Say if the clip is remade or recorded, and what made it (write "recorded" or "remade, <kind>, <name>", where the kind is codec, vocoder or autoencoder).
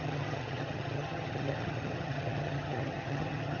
remade, vocoder, HiFi-GAN